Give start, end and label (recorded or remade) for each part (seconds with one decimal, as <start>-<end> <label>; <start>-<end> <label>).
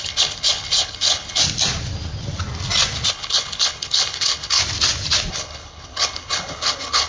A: 0.0-1.4 remade; 1.4-3.1 recorded; 3.1-4.6 remade; 4.6-5.3 recorded; 5.3-7.1 remade